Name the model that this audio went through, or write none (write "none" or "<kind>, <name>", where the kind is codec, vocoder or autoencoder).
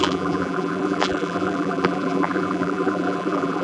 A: vocoder, BigVGAN v2